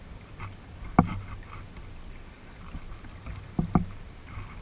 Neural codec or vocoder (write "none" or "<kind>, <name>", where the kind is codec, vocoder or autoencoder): none